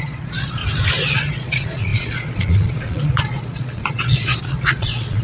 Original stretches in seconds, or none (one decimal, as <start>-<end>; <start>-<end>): 0.6-1.3